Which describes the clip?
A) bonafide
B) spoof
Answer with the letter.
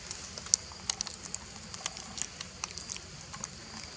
A